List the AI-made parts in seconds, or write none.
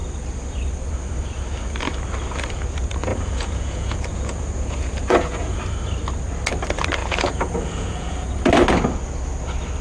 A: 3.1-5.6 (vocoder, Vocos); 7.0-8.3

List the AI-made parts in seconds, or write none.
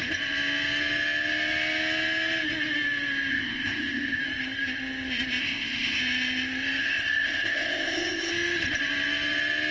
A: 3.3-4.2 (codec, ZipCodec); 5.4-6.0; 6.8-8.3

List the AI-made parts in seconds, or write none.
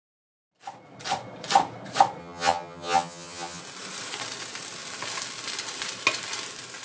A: 2.2-3.6 (vocoder, HiFi-GAN)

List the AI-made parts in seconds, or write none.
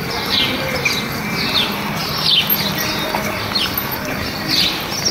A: none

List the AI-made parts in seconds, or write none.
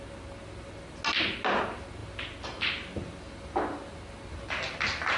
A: none